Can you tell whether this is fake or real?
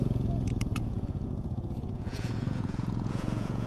fake